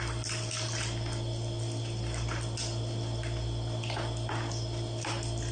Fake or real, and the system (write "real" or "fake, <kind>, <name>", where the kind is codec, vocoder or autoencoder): real